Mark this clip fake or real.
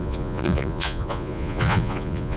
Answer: fake